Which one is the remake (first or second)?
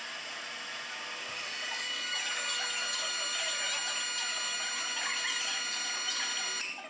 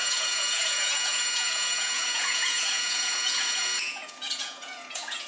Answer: second